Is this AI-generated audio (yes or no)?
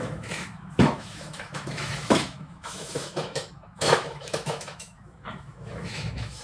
yes